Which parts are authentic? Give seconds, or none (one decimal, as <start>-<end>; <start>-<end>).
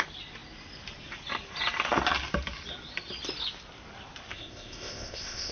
0.0-4.3